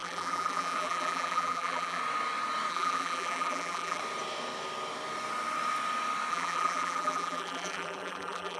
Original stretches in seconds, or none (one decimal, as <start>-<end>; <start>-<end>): 2.0-2.7; 4.0-6.3